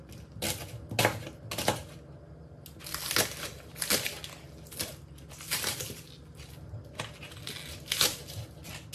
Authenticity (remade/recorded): recorded